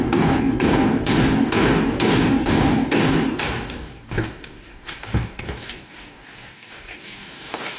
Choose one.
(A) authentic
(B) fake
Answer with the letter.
B